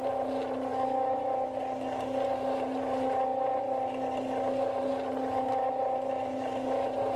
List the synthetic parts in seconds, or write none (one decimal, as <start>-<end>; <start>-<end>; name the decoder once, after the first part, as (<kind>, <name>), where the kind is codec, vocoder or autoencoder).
0.7-1.6 (autoencoder, DAC-VAE)